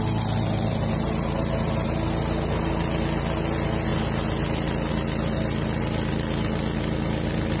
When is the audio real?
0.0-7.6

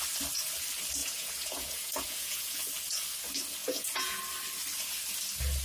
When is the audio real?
0.0-1.0; 2.6-3.6; 4.2-5.6

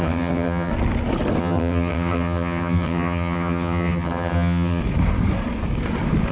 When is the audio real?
0.7-1.4; 4.8-6.3

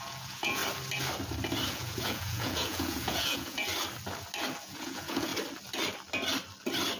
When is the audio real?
0.6-1.7; 3.7-4.6; 5.3-7.0

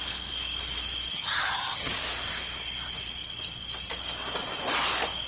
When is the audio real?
0.0-1.1; 1.9-5.3

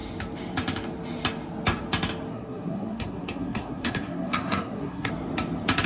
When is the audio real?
0.0-2.3; 5.1-5.9